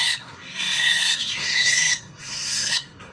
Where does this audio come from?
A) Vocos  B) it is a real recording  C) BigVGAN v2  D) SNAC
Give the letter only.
D